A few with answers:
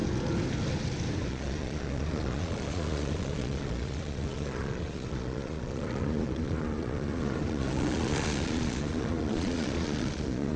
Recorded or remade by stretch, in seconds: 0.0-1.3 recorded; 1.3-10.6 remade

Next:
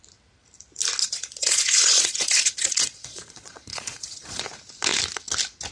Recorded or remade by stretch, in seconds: 0.0-1.0 recorded; 1.0-4.4 remade; 4.4-5.7 recorded

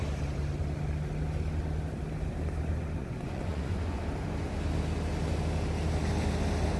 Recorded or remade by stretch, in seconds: 0.0-3.0 recorded; 3.0-4.0 remade; 4.0-6.8 recorded

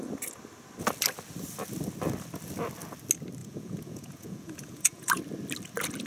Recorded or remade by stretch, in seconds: 0.0-3.4 recorded; 3.4-5.2 remade; 5.2-6.1 recorded

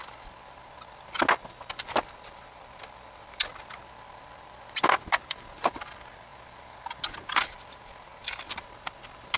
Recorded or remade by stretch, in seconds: 0.0-9.4 recorded

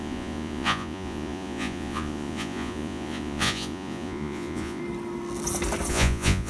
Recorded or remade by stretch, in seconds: 0.0-4.8 remade; 4.8-5.9 recorded; 5.9-6.5 remade

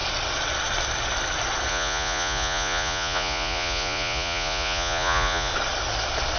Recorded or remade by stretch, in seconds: 0.0-1.7 recorded; 1.7-5.5 remade; 5.5-6.4 recorded

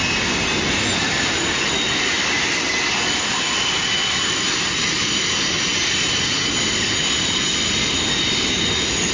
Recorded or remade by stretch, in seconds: 0.0-9.1 recorded